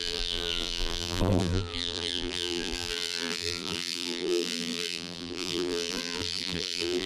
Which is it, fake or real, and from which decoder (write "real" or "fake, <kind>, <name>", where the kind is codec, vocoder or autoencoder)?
fake, vocoder, BigVGAN v2